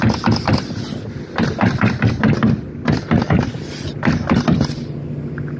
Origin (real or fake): real